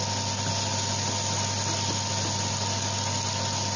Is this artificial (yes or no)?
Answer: no